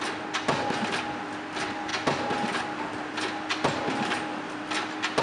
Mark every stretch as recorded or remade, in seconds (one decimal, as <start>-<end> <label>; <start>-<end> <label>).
0.0-5.2 recorded